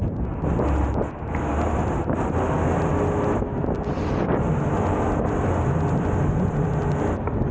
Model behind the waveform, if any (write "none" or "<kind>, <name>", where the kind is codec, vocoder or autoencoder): none